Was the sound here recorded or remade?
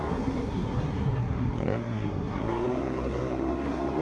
remade